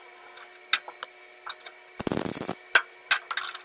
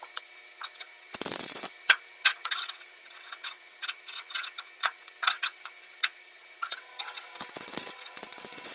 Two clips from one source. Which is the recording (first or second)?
first